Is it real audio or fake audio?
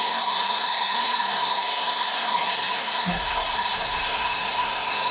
fake